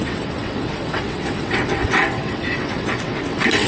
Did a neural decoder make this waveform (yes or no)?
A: yes